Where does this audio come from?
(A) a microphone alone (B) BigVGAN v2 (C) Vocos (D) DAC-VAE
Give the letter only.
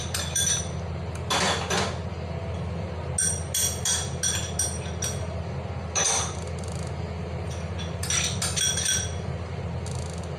A